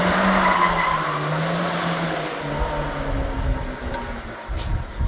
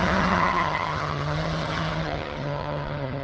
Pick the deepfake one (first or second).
second